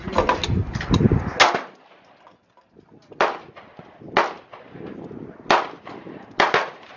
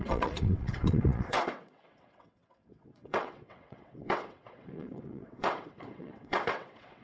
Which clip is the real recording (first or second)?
first